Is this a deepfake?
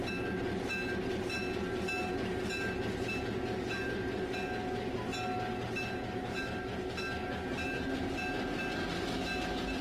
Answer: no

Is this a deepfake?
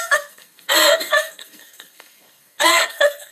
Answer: yes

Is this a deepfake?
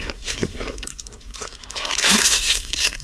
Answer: yes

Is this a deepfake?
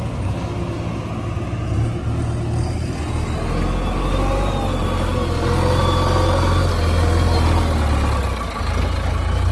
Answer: no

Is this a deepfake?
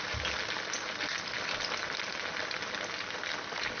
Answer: no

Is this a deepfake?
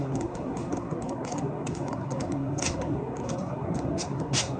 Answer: yes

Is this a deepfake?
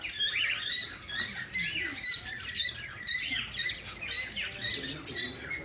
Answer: no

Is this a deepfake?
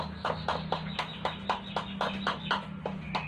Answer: no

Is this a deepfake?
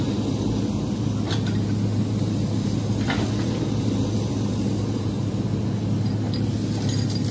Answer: no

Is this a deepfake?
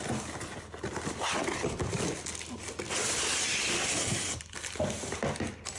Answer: no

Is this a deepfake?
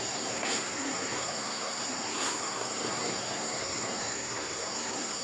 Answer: yes